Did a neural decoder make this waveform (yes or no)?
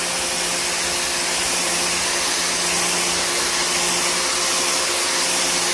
no